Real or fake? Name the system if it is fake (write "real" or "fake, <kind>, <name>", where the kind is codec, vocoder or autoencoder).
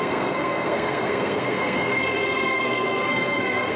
fake, codec, SNAC